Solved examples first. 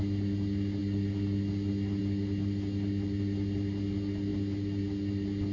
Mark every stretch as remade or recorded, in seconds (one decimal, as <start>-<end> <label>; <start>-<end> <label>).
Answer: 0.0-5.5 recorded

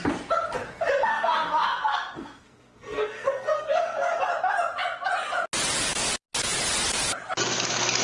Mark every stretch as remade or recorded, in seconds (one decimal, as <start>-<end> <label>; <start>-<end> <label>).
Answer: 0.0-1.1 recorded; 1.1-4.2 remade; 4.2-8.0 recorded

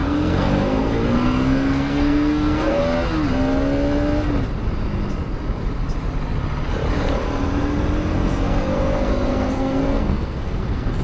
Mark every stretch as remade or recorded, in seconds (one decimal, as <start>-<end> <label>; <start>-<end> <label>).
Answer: 0.0-2.8 remade; 2.8-8.1 recorded; 8.1-11.0 remade

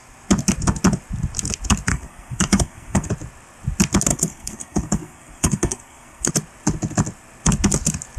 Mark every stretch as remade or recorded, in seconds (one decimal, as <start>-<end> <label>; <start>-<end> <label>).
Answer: 0.0-1.9 recorded; 1.9-3.1 remade; 3.1-4.1 recorded; 4.1-6.3 remade; 6.3-8.2 recorded

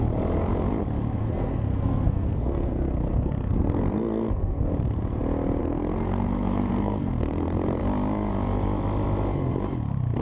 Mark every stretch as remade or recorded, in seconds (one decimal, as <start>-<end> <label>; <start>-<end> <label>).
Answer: 0.0-1.2 recorded; 1.2-4.7 remade; 4.7-5.6 recorded; 5.6-7.8 remade; 7.8-10.2 recorded

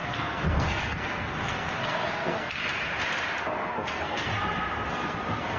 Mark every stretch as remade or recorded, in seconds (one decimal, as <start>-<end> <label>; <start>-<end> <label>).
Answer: 0.0-2.6 remade; 2.6-3.4 recorded; 3.4-4.3 remade; 4.3-4.9 recorded; 4.9-5.6 remade

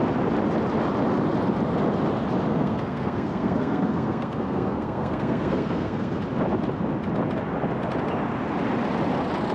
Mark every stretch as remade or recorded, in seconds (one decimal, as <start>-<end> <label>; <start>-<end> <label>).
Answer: 0.0-2.5 recorded; 2.5-6.2 remade; 6.2-9.5 recorded

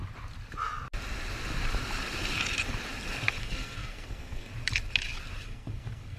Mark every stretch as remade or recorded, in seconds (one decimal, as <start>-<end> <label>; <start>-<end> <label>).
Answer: 0.0-3.4 recorded; 3.4-4.5 remade; 4.5-5.4 recorded; 5.4-6.2 remade